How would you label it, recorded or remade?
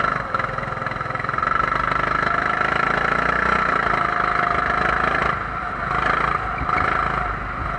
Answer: recorded